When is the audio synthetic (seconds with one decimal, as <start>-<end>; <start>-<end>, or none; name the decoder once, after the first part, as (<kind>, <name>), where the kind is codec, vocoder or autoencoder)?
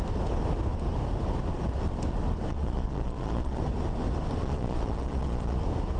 2.5-3.6 (vocoder, Vocos); 4.4-5.6